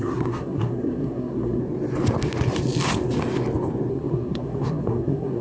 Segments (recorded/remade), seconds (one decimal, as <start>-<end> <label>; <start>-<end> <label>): 0.0-1.6 remade; 1.6-3.9 recorded; 3.9-5.4 remade